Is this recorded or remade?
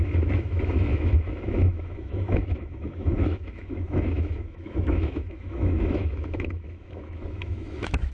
remade